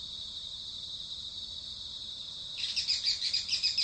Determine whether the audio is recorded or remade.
recorded